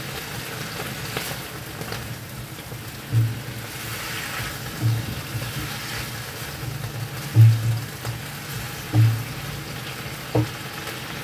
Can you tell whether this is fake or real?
real